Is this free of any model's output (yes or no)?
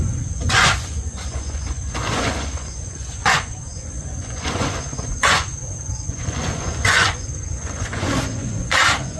no